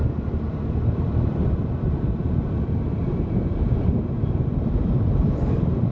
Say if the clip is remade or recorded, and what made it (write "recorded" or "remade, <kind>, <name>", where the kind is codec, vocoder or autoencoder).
remade, vocoder, BigVGAN v2